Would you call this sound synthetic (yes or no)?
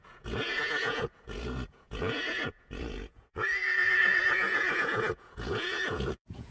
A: yes